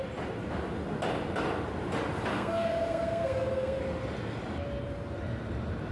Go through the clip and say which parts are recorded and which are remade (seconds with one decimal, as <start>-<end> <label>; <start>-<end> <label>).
0.0-2.3 recorded; 2.3-3.8 remade; 3.8-5.9 recorded